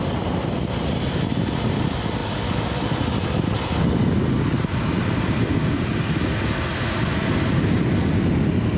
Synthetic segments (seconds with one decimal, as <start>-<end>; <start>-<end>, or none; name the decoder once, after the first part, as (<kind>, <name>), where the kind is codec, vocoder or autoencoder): none